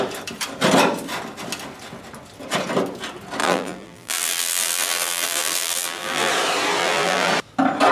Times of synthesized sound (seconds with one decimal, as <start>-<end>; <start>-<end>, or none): 3.4-6.3; 6.8-7.3